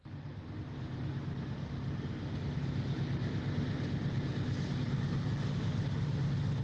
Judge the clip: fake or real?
real